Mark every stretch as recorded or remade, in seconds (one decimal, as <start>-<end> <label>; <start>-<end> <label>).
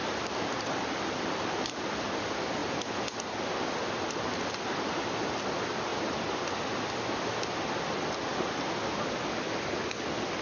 0.0-1.6 remade; 1.6-10.4 recorded